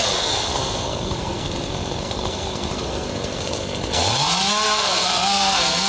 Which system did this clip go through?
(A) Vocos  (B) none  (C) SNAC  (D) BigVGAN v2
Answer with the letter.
C